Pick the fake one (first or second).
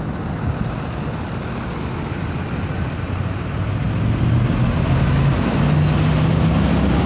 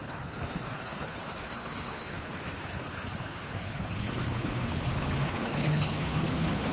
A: second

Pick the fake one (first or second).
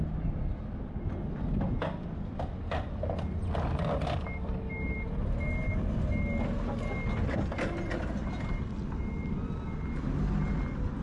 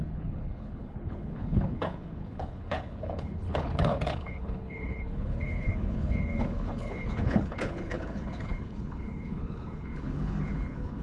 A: second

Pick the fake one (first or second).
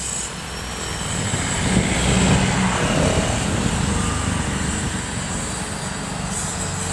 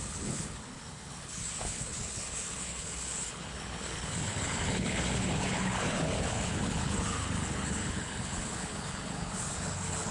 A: second